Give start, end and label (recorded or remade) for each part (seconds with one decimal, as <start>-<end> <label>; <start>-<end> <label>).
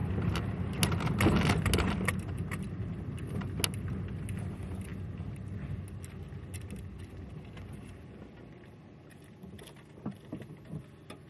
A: 0.0-11.3 recorded